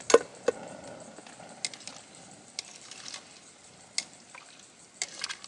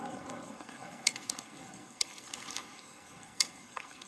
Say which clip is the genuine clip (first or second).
first